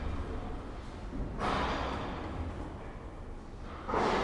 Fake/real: real